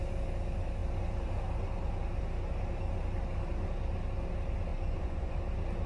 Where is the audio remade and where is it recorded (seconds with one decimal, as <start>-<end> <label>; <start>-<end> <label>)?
0.0-4.7 recorded; 4.7-5.4 remade; 5.4-5.9 recorded